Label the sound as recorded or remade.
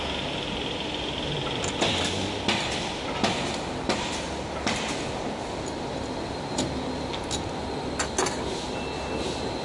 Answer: recorded